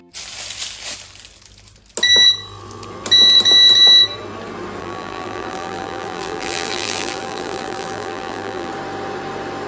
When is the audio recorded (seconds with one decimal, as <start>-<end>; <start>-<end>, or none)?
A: 0.0-4.8; 8.7-9.7